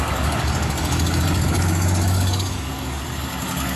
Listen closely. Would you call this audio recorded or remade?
remade